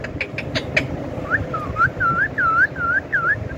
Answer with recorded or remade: recorded